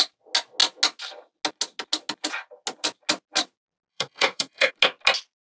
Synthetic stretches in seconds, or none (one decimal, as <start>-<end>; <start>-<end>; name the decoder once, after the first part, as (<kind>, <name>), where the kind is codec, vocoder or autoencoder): 3.9-4.7 (codec, SNAC)